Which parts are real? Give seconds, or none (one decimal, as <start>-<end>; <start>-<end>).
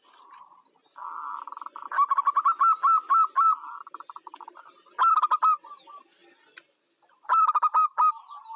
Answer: 0.0-8.6